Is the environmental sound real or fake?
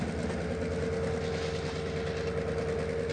real